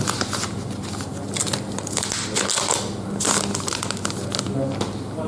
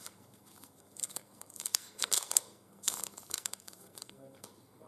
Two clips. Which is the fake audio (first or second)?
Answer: second